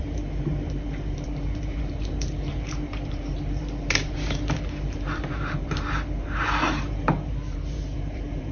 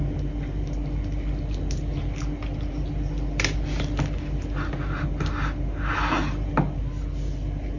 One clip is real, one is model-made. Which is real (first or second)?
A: second